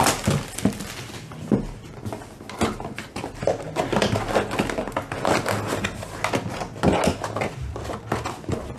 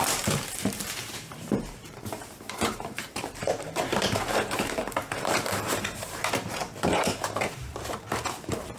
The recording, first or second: first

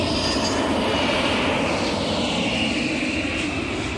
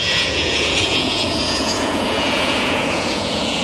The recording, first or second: first